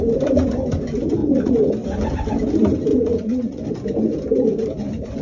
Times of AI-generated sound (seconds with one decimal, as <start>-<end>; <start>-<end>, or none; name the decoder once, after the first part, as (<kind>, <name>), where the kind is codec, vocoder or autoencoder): 1.2-1.7 (vocoder, Vocos); 2.9-3.6